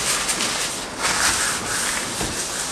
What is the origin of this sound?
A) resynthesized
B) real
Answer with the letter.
B